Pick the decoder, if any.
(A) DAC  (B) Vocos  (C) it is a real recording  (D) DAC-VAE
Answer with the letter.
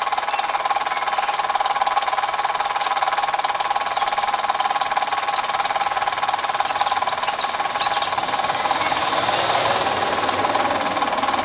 C